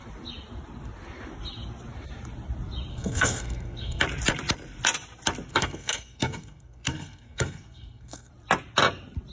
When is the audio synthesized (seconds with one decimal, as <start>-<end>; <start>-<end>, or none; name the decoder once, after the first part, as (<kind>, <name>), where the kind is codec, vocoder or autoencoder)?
2.9-4.0 (codec, SNAC); 5.5-8.3